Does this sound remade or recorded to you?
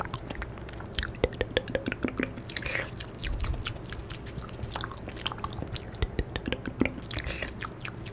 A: recorded